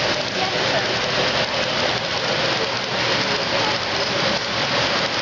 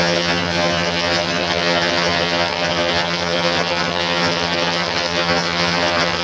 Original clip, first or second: first